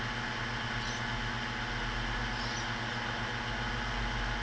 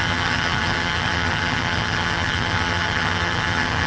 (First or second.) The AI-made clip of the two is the second